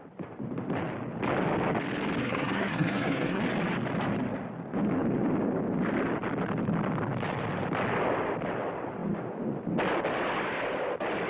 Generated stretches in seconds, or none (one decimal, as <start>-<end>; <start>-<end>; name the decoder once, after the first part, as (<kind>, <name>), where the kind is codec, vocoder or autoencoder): 2.2-3.4 (codec, SNAC)